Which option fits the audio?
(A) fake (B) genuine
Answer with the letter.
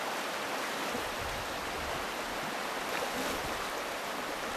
B